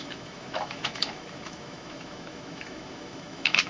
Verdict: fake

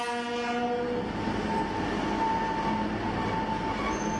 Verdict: real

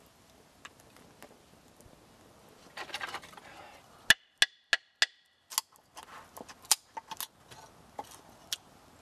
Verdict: real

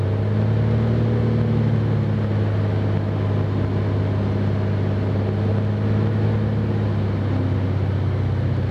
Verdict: real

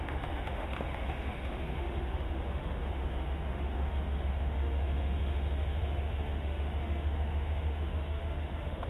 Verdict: fake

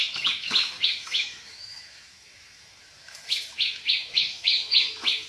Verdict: fake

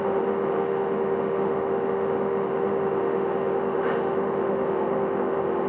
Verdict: fake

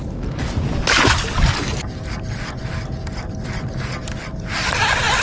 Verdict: real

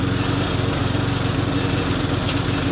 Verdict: real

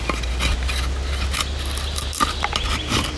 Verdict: real